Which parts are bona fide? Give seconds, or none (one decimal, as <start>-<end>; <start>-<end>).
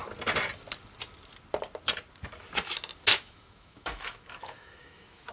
0.0-3.1